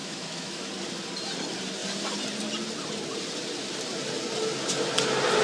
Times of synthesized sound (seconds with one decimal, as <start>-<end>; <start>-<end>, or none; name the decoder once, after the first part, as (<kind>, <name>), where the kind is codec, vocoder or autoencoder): 0.0-0.7 (autoencoder, DAC-VAE)